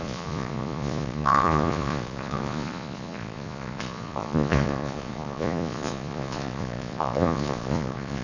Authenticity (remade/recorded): remade